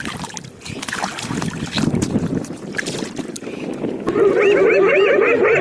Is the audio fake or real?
real